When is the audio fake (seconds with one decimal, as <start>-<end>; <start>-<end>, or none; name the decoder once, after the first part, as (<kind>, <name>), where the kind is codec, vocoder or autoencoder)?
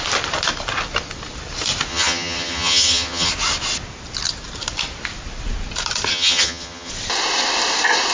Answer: 1.9-3.3 (vocoder, HiFi-GAN); 6.1-6.9